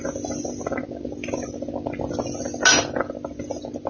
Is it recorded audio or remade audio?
recorded